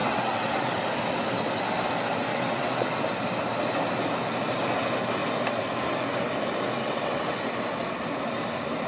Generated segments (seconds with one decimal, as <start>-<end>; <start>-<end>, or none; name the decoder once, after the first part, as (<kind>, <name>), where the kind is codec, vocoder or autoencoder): 0.0-0.7 (vocoder, WaveNeXt); 2.3-3.0; 6.8-7.5